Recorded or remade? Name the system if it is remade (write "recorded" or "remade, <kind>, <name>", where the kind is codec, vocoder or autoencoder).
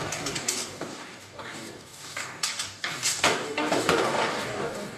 remade, codec, DAC